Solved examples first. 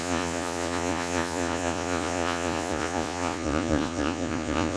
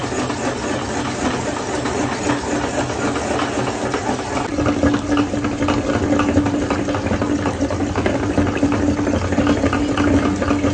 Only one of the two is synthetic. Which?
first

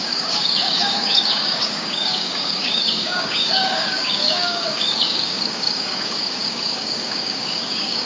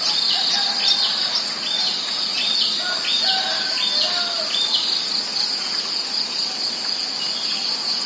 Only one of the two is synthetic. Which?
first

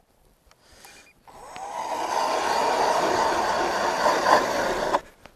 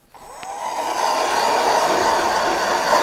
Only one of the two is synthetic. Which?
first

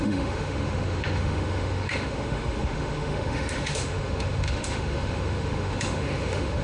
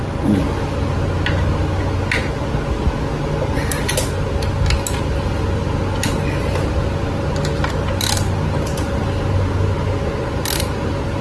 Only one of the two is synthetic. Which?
first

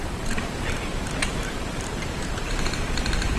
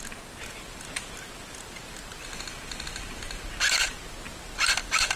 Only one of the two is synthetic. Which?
first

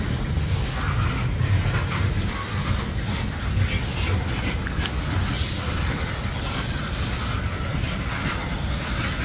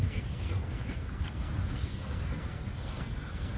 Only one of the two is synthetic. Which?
second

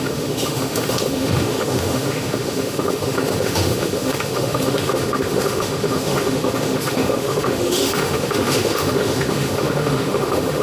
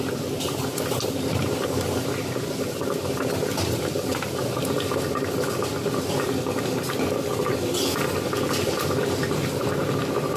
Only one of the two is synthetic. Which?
first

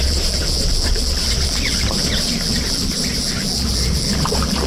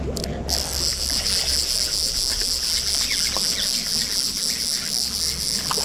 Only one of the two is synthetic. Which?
first